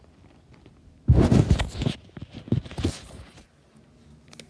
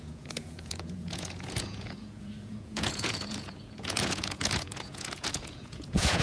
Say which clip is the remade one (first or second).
second